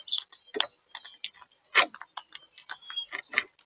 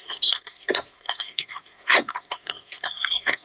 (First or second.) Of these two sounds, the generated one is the second